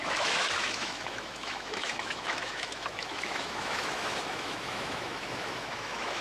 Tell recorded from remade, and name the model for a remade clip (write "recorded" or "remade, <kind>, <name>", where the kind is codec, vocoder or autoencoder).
remade, autoencoder, DAC-VAE